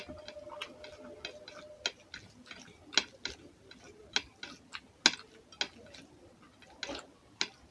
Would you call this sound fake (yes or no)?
no